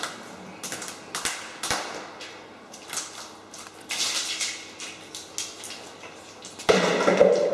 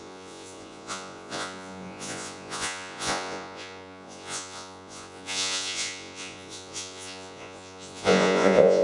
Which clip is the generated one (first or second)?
second